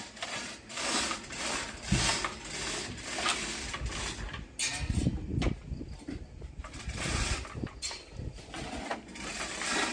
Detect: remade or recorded recorded